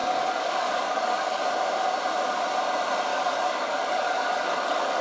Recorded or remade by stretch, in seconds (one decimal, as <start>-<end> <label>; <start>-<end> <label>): 0.0-1.5 remade; 1.5-3.1 recorded; 3.1-5.0 remade